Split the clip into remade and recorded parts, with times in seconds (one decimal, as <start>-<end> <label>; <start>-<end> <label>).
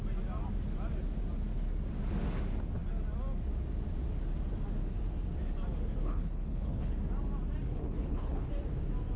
0.0-6.0 recorded; 6.0-6.9 remade; 6.9-7.7 recorded; 7.7-8.5 remade; 8.5-9.2 recorded